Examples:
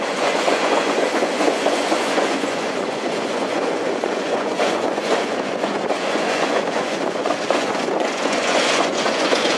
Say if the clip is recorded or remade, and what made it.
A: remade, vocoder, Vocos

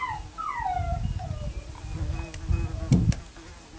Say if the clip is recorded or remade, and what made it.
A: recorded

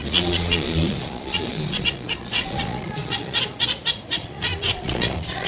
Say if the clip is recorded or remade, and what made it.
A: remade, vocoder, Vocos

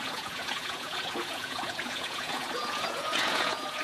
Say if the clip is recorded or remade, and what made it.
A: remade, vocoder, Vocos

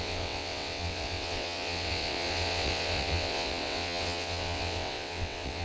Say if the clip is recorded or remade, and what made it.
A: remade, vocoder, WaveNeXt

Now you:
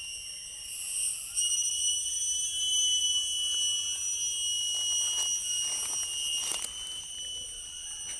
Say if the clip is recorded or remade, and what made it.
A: recorded